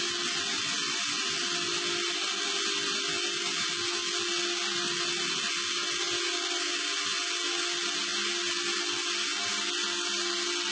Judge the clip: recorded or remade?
recorded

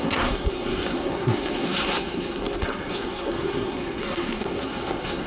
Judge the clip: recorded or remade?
remade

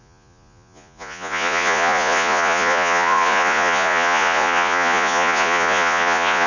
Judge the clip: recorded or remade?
remade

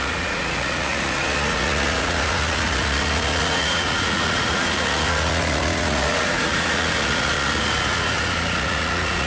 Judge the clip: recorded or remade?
remade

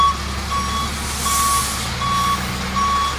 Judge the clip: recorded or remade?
recorded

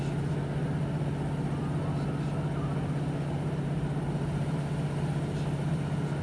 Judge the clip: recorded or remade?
recorded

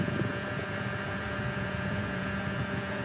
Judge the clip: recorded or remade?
remade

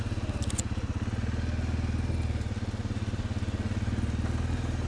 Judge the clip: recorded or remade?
recorded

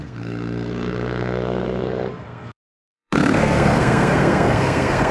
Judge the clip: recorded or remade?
remade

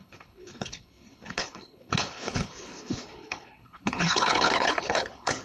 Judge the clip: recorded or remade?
remade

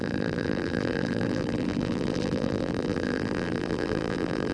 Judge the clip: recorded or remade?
remade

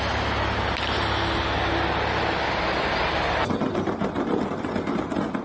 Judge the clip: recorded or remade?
recorded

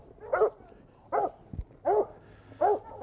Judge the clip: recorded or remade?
recorded